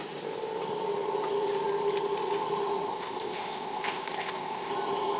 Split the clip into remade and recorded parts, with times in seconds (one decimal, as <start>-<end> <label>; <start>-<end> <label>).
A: 0.0-2.9 recorded; 2.9-4.7 remade; 4.7-5.2 recorded